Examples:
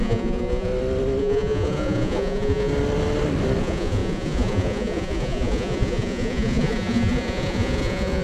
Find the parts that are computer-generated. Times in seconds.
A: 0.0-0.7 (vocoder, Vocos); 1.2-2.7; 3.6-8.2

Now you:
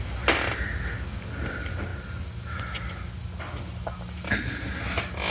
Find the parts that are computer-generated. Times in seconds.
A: none

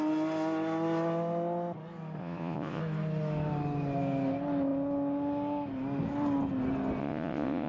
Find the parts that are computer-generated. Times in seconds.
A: 2.2-2.8 (vocoder, Vocos); 7.0-7.7